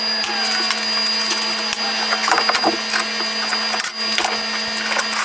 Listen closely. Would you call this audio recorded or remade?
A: recorded